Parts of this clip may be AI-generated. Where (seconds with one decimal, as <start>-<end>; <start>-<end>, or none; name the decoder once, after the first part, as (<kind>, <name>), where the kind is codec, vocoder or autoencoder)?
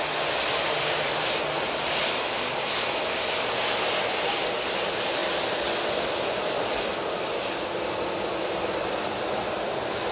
none